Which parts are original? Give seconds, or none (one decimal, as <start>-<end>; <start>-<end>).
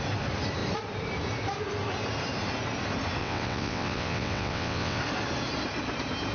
0.0-3.2; 5.0-6.3